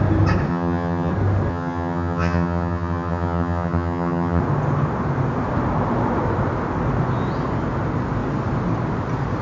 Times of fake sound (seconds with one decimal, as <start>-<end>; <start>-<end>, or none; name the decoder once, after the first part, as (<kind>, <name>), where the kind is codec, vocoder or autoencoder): 0.5-1.1 (vocoder, HiFi-GAN); 1.5-4.4